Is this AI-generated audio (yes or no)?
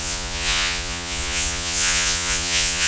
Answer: yes